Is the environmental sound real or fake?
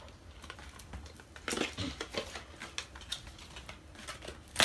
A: real